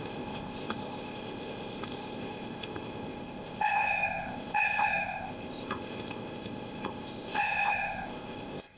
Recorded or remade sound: remade